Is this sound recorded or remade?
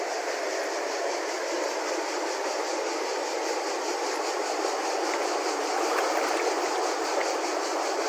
recorded